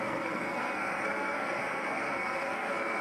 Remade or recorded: remade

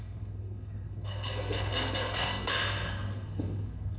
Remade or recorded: remade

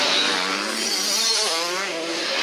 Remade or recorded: recorded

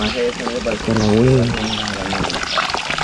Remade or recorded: recorded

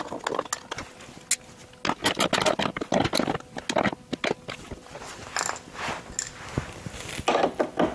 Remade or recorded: recorded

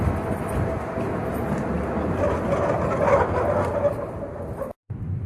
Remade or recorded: recorded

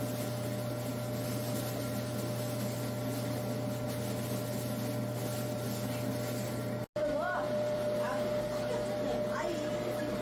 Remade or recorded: recorded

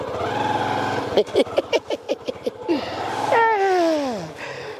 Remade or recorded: recorded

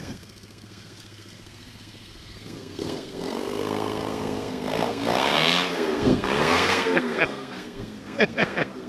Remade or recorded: remade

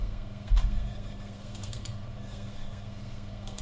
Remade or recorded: remade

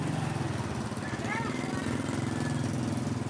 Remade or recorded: recorded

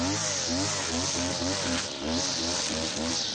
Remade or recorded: recorded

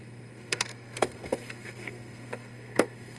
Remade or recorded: remade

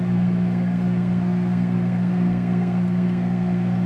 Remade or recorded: remade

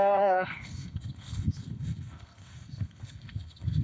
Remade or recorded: remade